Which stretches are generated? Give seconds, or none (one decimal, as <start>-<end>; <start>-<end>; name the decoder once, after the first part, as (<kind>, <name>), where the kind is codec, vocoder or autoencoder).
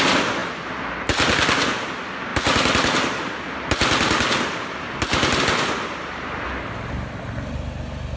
none